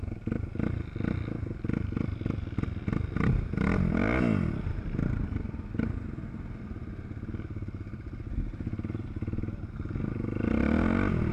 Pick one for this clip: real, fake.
real